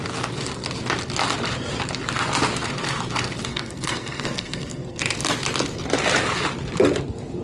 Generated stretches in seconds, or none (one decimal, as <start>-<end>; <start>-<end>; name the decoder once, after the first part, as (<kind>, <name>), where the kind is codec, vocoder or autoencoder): 3.5-5.0 (codec, SNAC)